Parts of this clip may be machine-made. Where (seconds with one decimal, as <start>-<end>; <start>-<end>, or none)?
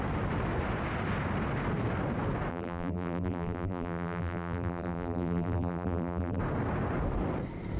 2.5-6.4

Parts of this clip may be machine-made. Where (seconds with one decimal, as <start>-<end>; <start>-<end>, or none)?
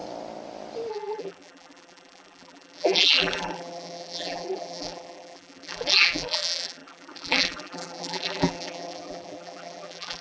0.9-10.2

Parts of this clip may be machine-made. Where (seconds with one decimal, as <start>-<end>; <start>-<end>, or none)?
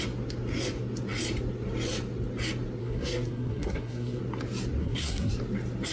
2.8-4.2; 4.8-5.3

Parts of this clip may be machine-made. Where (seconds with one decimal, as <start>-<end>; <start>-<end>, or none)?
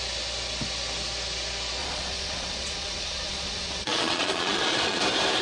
1.8-5.0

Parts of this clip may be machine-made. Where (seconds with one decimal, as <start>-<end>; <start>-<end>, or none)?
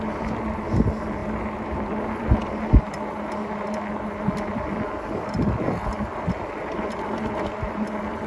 none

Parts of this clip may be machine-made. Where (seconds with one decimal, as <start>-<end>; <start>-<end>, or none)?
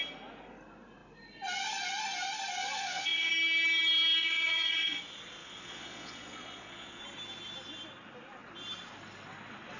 2.6-3.3; 4.2-5.0; 5.4-7.0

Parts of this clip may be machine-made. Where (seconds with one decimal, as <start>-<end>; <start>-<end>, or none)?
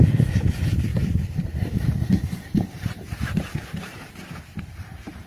0.9-4.1; 4.5-5.3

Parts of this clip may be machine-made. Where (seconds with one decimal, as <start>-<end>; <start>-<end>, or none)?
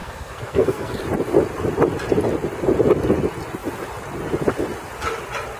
0.0-1.0